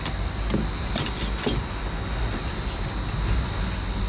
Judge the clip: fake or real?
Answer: real